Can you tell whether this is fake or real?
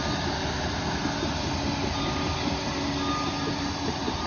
real